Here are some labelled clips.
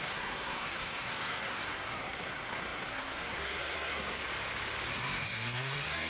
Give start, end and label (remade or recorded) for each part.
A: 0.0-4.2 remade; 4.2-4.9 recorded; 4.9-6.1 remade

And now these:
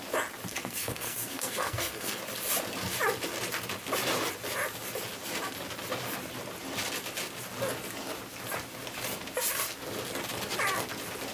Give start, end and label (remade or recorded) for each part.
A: 0.0-0.5 recorded; 0.5-2.2 remade; 2.2-11.3 recorded

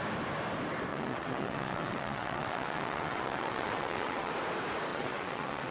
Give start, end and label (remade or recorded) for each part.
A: 0.0-0.9 recorded; 0.9-4.3 remade; 4.3-4.9 recorded; 4.9-5.7 remade

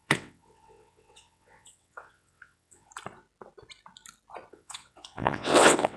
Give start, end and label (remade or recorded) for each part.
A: 0.0-2.9 remade; 2.9-4.5 recorded; 4.5-6.0 remade